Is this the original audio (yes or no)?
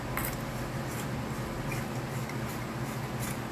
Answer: yes